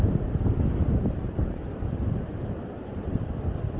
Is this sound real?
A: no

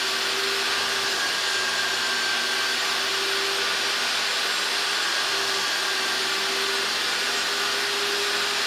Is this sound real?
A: yes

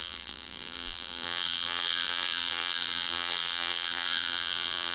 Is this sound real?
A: no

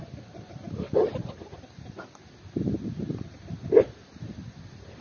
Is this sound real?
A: no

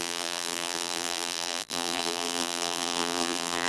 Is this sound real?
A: no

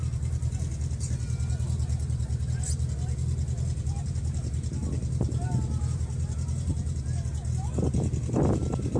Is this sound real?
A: yes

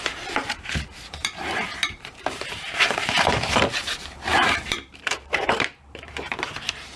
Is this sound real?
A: no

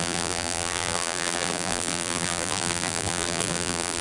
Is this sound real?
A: no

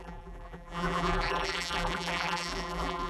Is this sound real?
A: no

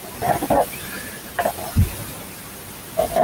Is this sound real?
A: yes